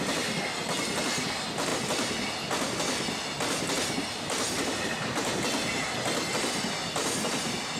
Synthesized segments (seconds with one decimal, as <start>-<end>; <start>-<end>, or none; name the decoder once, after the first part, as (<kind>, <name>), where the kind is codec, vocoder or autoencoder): none